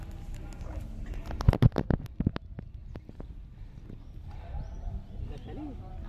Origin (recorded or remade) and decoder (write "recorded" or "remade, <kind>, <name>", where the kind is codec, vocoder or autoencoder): recorded